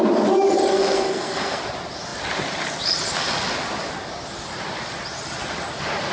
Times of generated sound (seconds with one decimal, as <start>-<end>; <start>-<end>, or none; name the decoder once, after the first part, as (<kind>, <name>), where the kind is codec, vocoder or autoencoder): 0.7-1.6 (codec, SNAC)

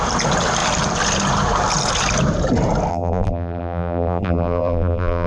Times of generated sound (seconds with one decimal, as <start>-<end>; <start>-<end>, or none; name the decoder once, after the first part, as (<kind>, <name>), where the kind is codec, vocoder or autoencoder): 2.9-5.3 (vocoder, BigVGAN v2)

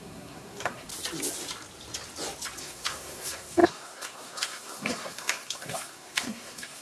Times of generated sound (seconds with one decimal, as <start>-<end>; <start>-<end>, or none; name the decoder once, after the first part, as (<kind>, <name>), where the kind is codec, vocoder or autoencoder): 0.0-0.9 (codec, SNAC); 2.6-6.8

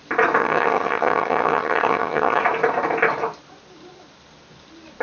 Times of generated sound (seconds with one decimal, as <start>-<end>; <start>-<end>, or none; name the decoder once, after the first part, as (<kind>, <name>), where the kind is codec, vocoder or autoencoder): 0.4-2.4 (vocoder, HiFi-GAN)

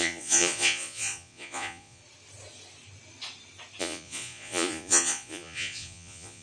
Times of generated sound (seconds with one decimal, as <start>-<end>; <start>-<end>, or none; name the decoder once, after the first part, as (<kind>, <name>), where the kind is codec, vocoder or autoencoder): 0.0-2.0 (vocoder, Vocos); 3.8-6.4